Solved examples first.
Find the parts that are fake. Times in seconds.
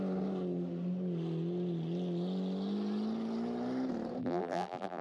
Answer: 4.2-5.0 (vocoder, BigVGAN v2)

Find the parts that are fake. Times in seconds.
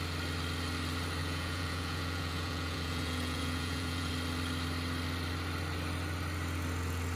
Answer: 1.2-4.1 (vocoder, Vocos)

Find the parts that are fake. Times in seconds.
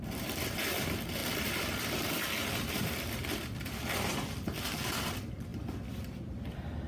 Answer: 0.0-6.9 (vocoder, BigVGAN v2)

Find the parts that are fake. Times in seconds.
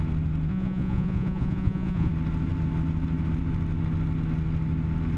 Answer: 0.5-2.1 (vocoder, Vocos)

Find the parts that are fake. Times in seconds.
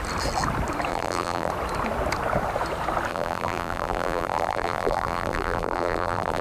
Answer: 0.9-1.5 (vocoder, BigVGAN v2); 3.1-6.4